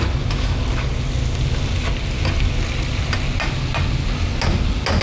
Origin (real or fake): real